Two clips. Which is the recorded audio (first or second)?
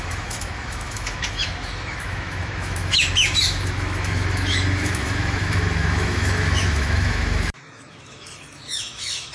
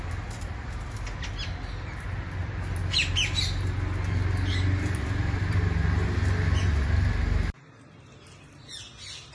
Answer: second